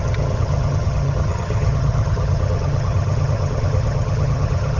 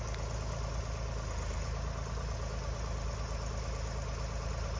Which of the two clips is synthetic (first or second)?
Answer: first